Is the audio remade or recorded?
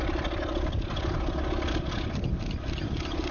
recorded